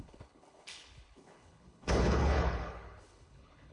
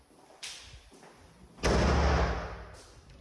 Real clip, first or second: second